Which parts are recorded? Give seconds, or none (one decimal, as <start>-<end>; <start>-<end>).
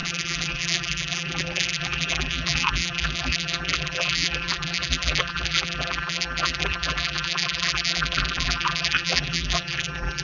none